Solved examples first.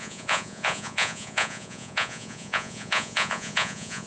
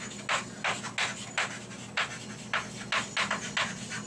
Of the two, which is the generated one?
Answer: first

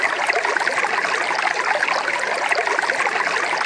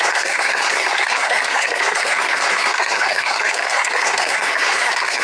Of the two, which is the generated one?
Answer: second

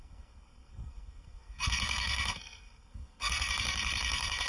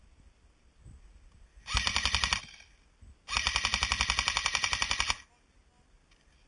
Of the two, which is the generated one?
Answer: first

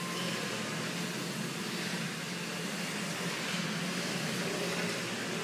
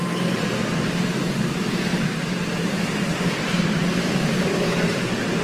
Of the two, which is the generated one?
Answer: second